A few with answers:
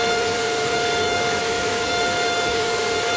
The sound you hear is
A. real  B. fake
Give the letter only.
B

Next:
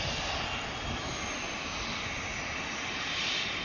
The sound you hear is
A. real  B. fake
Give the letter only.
A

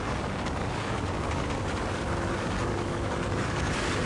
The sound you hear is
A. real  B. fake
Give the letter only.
B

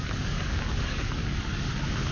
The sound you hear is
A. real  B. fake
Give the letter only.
B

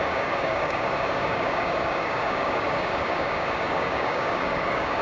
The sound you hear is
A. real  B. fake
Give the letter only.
B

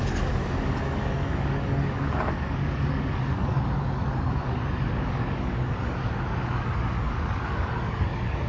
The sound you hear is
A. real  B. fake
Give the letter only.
B